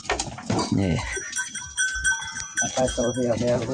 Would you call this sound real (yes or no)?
no